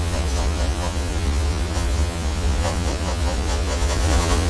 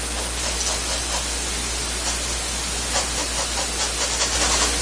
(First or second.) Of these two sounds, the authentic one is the second